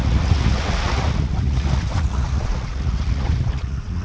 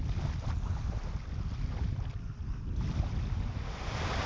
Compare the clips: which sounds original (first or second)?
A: second